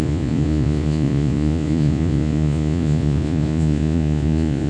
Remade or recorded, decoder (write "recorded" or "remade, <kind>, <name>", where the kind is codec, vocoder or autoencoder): remade, vocoder, Vocos